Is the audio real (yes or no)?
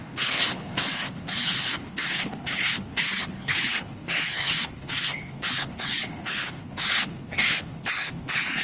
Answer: no